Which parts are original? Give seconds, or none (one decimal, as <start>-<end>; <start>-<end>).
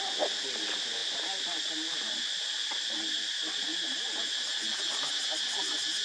0.0-6.0